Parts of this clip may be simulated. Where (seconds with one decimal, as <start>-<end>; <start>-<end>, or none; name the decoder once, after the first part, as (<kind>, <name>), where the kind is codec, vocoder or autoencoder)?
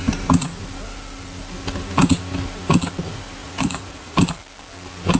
3.4-4.3 (vocoder, Vocos)